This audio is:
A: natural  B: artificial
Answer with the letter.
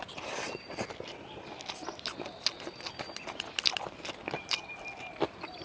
A